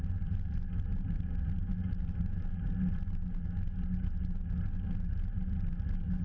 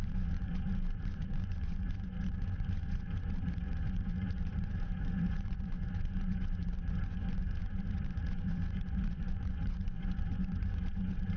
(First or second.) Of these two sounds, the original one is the first